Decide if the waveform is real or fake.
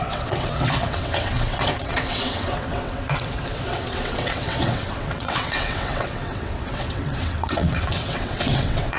fake